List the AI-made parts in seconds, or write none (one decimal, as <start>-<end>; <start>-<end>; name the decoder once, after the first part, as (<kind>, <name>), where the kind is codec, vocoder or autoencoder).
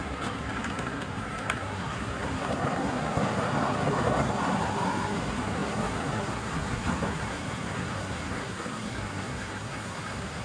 0.0-10.4 (codec, SNAC)